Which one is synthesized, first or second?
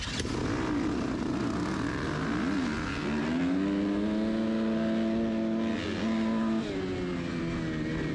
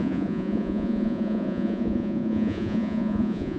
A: second